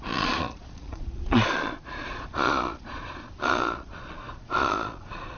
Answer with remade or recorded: remade